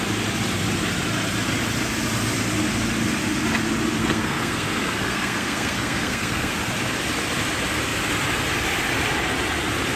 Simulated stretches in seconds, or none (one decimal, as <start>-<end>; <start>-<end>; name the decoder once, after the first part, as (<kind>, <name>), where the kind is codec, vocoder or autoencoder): 4.0-6.5 (codec, SNAC)